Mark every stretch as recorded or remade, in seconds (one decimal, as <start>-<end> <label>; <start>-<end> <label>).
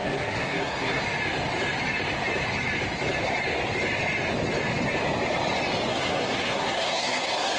0.0-1.0 remade; 1.0-5.9 recorded; 5.9-7.6 remade